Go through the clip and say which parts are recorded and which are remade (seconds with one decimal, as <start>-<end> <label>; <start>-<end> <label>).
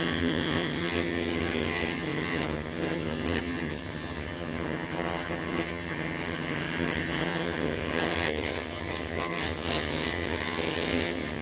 0.0-11.4 remade